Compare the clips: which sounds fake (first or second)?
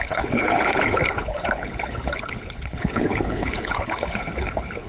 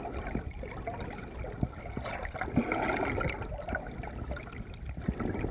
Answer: first